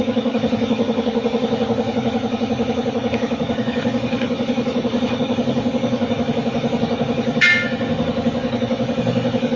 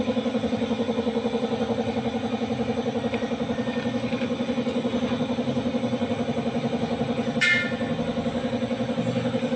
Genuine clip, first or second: second